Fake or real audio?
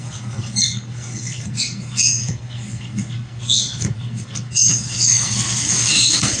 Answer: fake